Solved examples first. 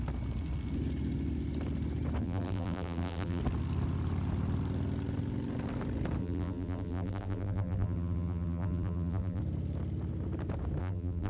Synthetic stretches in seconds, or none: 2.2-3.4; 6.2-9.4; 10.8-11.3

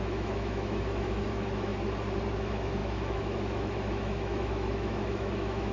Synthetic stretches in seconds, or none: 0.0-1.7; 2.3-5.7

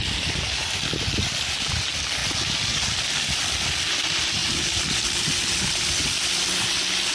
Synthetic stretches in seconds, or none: none